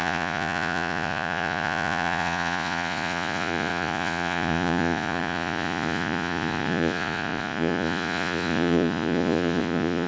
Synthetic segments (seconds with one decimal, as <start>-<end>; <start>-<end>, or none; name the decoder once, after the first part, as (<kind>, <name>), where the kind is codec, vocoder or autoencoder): 0.0-10.1 (vocoder, Vocos)